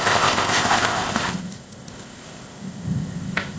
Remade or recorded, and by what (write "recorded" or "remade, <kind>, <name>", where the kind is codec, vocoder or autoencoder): remade, codec, ZipCodec